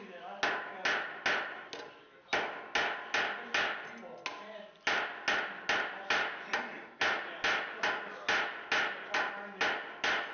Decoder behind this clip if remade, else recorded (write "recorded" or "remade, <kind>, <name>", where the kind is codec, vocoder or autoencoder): recorded